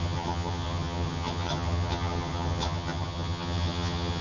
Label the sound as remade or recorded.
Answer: remade